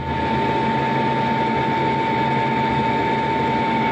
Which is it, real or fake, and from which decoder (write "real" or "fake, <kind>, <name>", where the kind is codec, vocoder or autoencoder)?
real